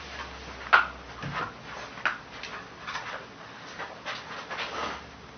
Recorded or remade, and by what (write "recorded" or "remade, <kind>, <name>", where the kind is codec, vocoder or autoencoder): recorded